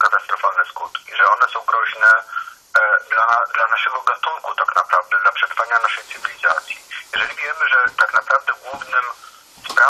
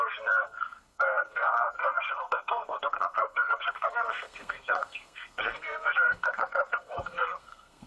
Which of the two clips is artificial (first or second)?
second